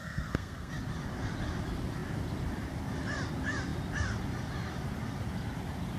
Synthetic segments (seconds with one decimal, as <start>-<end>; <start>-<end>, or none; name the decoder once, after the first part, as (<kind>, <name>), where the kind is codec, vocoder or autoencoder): 0.0-0.7 (codec, SNAC)